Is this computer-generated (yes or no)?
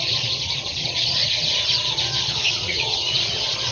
yes